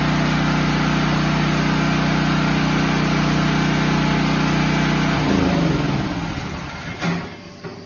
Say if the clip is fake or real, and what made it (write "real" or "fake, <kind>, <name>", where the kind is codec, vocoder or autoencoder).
real